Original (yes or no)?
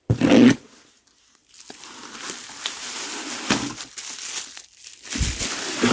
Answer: yes